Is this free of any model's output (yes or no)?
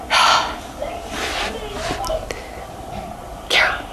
yes